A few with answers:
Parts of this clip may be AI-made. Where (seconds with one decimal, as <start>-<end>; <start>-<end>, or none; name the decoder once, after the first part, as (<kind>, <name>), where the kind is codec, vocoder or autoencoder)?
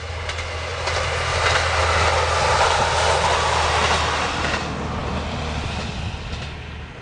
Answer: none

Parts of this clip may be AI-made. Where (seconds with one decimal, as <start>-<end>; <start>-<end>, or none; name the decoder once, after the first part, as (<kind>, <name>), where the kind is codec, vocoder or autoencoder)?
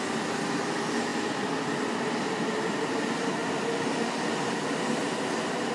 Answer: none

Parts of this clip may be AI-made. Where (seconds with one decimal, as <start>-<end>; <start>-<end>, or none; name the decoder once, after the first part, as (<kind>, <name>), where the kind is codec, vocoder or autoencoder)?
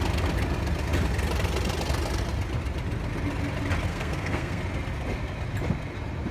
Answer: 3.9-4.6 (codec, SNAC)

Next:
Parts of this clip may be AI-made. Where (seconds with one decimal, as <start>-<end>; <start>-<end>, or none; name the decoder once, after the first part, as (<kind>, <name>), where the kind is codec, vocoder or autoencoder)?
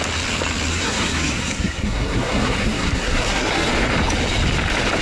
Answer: 0.7-3.7 (codec, SNAC)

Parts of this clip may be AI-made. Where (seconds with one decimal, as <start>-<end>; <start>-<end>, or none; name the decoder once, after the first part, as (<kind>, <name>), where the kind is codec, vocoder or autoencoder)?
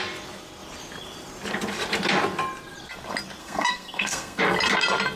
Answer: 3.4-4.4 (codec, SNAC)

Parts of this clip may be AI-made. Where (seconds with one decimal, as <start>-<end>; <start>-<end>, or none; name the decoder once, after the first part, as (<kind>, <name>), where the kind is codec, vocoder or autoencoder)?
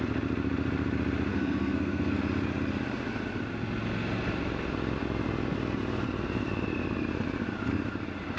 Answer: 1.3-2.2 (codec, SNAC)